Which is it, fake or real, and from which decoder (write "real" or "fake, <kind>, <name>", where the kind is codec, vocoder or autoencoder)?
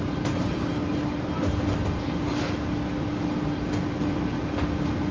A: real